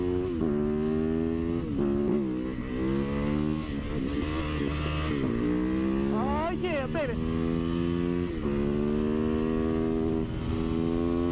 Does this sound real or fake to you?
real